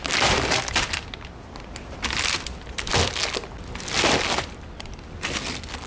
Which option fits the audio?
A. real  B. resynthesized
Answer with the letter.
A